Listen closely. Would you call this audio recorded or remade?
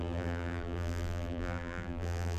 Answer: remade